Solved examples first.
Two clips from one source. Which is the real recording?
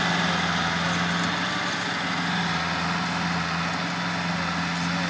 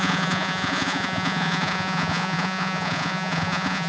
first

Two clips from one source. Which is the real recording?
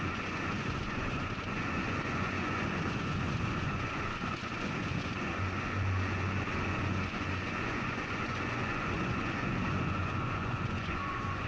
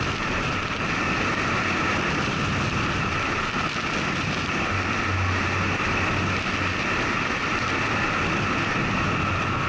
second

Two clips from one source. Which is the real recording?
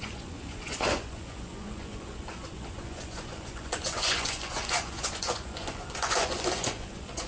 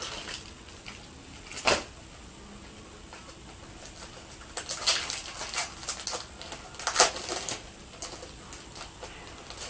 second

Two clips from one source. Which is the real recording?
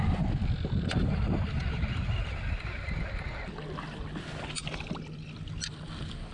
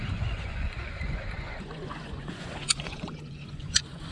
first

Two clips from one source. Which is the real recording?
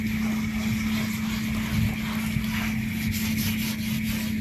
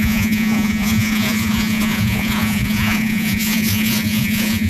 first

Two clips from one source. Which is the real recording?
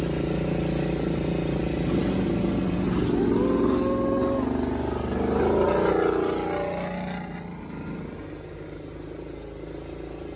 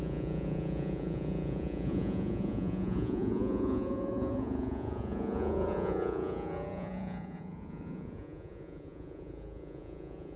first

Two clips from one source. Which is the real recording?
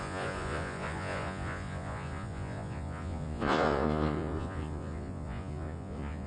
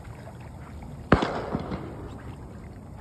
second